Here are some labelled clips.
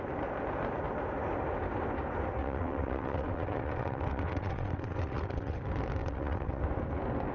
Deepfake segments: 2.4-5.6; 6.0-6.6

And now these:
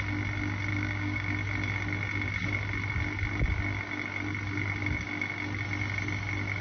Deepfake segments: 0.7-1.3

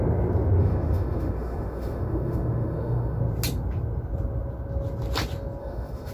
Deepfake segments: 0.6-3.2; 5.6-6.1

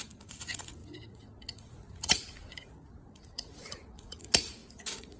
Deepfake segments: 0.0-5.2

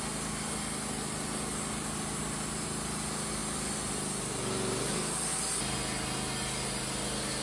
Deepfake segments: none

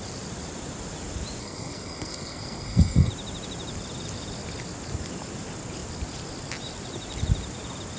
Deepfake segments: 1.4-3.1

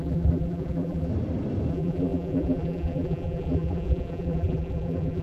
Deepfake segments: 0.0-1.1; 1.7-5.2